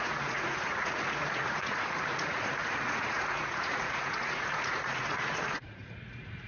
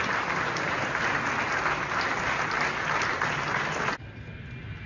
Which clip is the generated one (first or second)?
first